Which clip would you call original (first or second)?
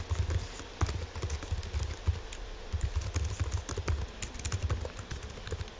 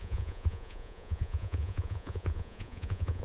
first